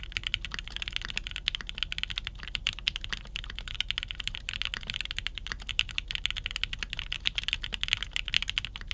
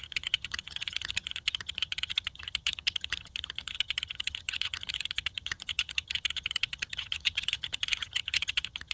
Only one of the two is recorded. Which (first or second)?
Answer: first